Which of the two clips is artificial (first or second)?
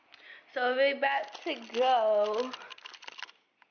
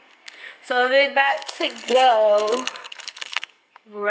second